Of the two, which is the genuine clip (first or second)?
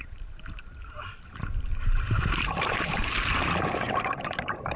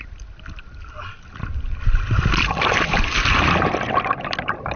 second